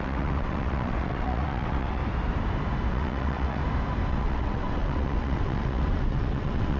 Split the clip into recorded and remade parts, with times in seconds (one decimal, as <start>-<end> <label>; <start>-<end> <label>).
0.0-2.0 remade; 2.0-2.9 recorded; 2.9-3.6 remade; 3.6-4.1 recorded; 4.1-6.8 remade